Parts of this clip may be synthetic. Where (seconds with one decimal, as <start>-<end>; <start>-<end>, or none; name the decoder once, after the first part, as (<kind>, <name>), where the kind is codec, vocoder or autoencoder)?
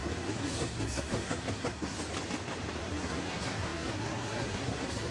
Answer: 0.0-2.0 (codec, SNAC); 2.8-5.1